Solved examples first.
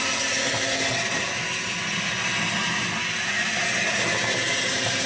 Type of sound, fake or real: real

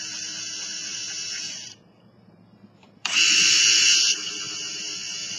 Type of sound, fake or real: fake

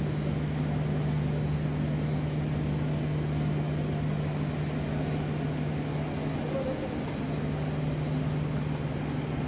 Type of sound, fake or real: real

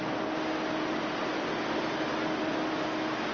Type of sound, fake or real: real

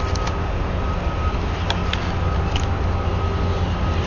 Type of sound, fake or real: real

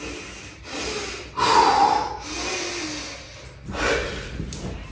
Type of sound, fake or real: real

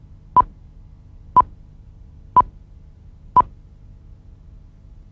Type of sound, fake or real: real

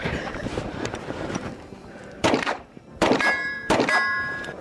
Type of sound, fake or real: fake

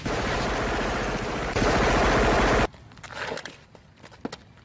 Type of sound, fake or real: real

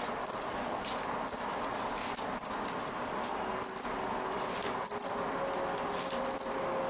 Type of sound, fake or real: real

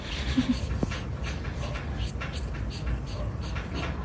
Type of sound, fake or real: real